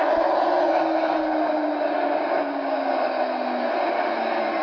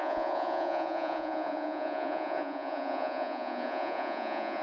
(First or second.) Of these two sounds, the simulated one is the second